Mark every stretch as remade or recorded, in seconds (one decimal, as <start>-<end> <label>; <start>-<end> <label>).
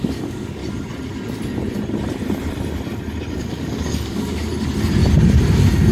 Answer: 0.0-0.6 remade; 0.6-3.3 recorded; 3.3-4.5 remade; 4.5-5.9 recorded